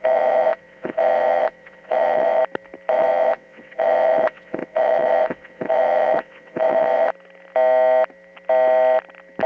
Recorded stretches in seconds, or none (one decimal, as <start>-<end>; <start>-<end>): 2.4-2.9; 7.1-9.5